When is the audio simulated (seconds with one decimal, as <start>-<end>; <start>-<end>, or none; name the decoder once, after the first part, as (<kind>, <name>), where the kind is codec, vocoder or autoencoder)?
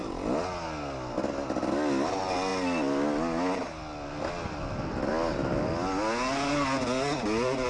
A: none